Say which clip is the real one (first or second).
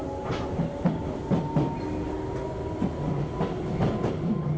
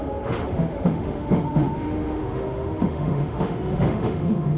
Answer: first